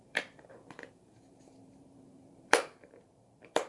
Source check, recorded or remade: remade